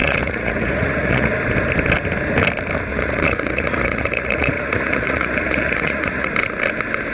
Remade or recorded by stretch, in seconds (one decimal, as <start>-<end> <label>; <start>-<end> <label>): 0.0-1.3 remade; 1.3-2.9 recorded; 2.9-6.3 remade; 6.3-7.1 recorded

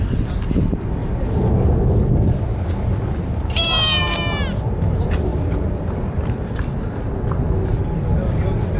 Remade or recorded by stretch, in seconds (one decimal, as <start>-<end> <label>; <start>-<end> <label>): 0.0-8.8 recorded